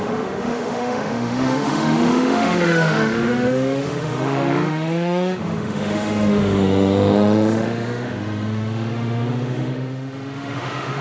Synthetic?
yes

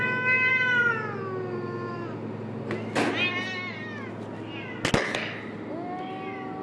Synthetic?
no